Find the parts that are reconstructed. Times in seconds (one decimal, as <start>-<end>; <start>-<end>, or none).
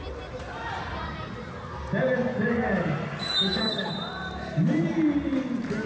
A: 2.3-3.9